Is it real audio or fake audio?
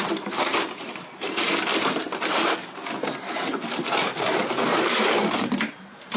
fake